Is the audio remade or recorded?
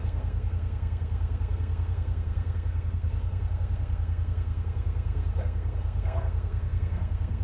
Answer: remade